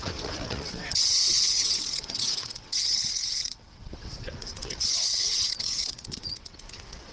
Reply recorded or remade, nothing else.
remade